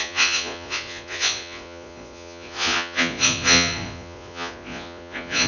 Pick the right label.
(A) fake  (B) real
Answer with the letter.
A